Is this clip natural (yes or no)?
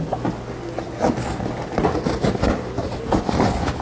yes